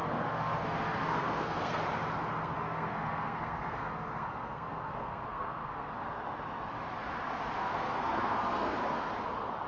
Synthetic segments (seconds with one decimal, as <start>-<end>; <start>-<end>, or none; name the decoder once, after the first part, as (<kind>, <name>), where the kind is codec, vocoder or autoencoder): 0.0-1.8 (codec, SNAC); 2.3-5.9; 7.6-8.8